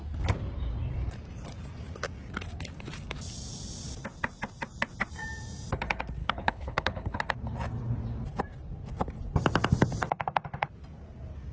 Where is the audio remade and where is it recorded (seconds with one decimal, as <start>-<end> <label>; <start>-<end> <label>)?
0.0-6.2 recorded; 6.2-7.2 remade; 7.2-11.5 recorded